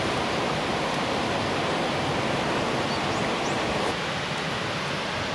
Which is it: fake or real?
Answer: real